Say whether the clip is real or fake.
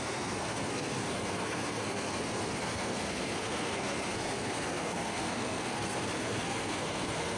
fake